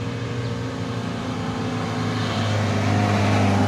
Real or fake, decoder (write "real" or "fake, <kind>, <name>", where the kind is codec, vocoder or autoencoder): real